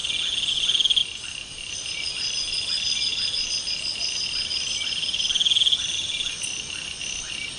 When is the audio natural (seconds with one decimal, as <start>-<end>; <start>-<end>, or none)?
0.0-7.6